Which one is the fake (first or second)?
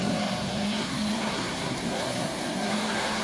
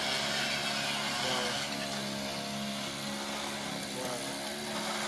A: first